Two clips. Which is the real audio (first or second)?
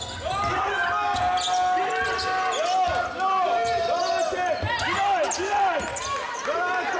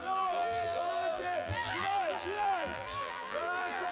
first